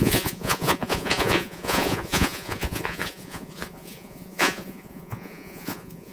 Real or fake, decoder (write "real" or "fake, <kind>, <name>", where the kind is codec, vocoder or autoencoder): fake, vocoder, Vocos